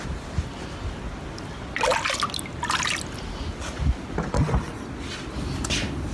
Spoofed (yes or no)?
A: no